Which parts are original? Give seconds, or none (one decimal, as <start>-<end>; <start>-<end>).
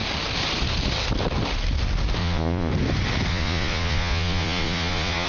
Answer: 0.0-2.2; 2.7-3.3